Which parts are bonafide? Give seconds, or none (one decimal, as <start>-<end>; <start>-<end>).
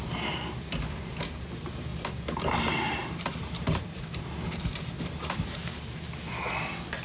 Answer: 0.0-1.9; 6.1-7.0